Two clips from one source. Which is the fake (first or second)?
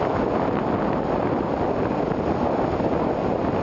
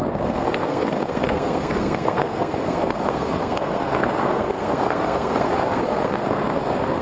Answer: second